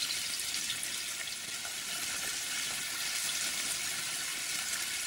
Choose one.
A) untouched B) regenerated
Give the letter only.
A